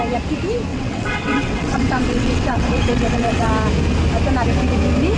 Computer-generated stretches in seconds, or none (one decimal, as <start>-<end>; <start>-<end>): 0.7-3.5